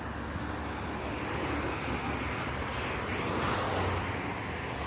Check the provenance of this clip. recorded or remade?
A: recorded